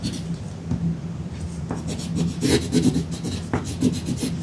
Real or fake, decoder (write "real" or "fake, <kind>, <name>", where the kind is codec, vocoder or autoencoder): real